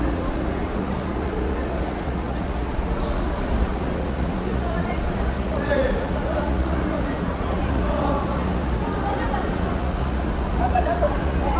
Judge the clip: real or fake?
fake